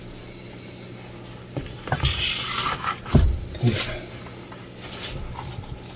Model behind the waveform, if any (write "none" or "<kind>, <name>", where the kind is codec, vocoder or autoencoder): none